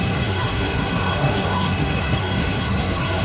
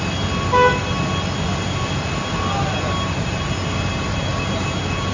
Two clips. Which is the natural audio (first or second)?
second